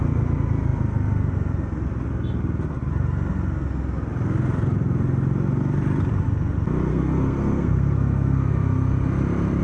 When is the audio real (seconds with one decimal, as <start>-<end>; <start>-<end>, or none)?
0.0-6.9; 8.5-9.6